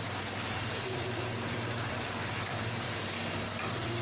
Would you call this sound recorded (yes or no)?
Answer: no